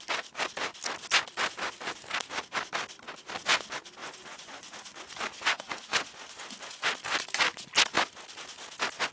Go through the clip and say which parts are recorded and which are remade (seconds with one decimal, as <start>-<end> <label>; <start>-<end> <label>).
0.0-4.0 recorded; 4.0-6.9 remade; 6.9-9.1 recorded